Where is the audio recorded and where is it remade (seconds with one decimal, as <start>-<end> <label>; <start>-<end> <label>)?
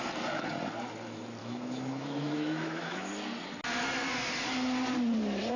0.0-1.4 recorded; 1.4-3.1 remade; 3.1-5.6 recorded